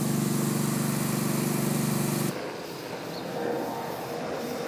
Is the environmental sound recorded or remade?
recorded